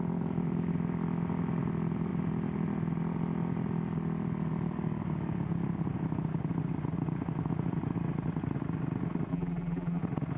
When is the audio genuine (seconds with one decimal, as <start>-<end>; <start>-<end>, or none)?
0.0-9.3; 10.0-10.4